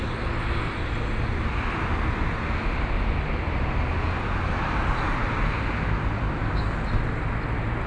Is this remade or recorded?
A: recorded